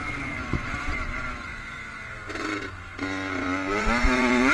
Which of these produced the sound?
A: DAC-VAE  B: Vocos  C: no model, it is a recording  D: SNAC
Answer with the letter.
B